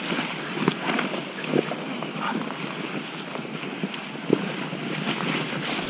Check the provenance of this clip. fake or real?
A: real